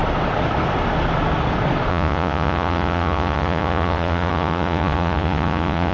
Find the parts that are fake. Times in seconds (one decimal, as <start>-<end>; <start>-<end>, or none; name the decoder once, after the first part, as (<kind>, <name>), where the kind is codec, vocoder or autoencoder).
1.9-5.9 (vocoder, Vocos)